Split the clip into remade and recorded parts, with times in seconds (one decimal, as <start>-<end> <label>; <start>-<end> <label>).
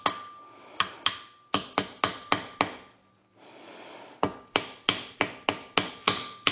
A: 0.0-6.5 recorded